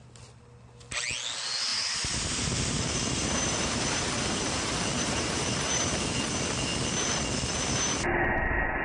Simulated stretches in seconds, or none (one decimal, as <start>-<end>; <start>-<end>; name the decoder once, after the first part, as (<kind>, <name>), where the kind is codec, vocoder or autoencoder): 1.7-5.7 (vocoder, BigVGAN v2)